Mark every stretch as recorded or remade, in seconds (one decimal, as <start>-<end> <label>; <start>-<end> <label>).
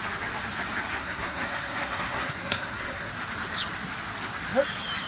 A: 0.0-1.0 recorded; 1.0-3.1 remade; 3.1-5.1 recorded